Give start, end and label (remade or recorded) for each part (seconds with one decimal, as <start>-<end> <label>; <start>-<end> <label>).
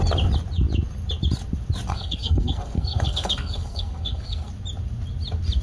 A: 0.0-1.9 recorded; 1.9-4.5 remade; 4.5-5.6 recorded